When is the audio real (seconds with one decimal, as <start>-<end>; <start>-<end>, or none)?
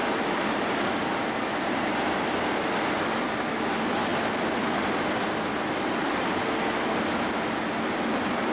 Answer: 1.0-1.5; 2.2-8.5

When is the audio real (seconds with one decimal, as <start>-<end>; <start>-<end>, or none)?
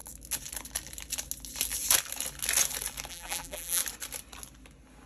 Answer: 0.0-3.1; 3.8-5.1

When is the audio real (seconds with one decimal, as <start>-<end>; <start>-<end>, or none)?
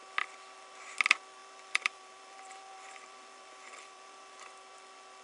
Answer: 0.0-1.4; 4.3-5.2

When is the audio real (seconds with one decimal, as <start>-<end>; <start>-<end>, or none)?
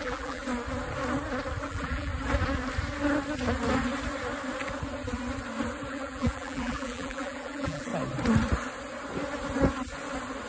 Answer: 0.4-1.6; 2.1-5.9; 7.9-10.5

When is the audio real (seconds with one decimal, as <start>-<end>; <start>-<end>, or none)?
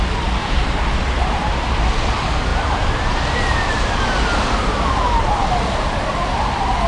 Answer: 0.0-0.4; 1.5-2.5; 3.0-6.9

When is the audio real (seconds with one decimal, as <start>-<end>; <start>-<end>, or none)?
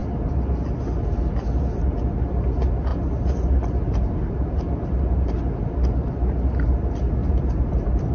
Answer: 0.0-2.9; 5.4-7.2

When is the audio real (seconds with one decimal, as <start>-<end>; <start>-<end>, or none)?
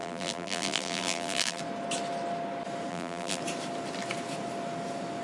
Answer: 1.6-2.9; 3.4-5.2